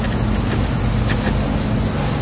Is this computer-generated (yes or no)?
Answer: no